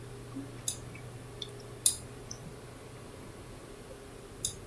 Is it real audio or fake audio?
real